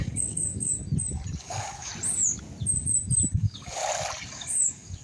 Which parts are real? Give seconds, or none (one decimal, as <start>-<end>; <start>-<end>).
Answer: 0.8-1.4; 1.9-3.4; 3.8-4.3